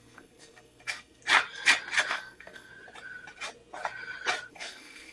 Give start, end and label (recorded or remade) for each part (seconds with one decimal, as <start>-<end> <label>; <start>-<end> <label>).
0.0-1.2 remade; 1.2-2.1 recorded; 2.1-2.7 remade; 2.7-4.5 recorded; 4.5-5.1 remade